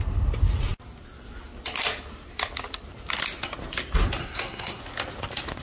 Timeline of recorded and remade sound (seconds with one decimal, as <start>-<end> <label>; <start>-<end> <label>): 0.0-4.2 recorded; 4.2-4.8 remade; 4.8-5.6 recorded